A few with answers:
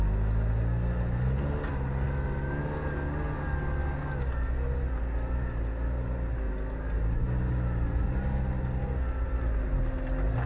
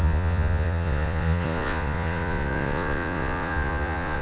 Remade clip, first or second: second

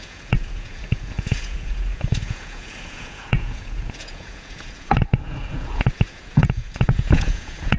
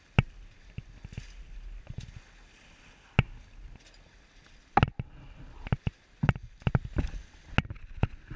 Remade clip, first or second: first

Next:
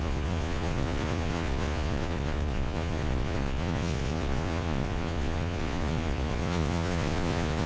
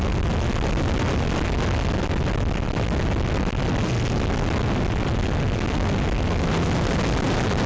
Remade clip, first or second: first